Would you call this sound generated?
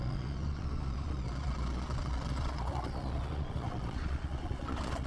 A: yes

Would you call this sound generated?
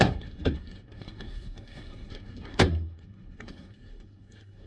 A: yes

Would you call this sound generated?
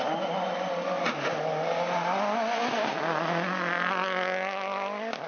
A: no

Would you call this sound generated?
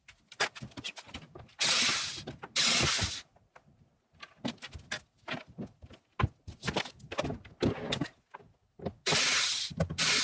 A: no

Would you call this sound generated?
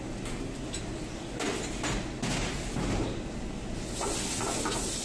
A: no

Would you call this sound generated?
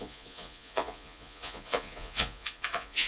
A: yes